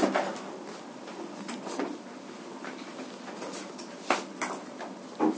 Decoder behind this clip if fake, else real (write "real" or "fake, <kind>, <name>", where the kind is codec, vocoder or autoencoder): real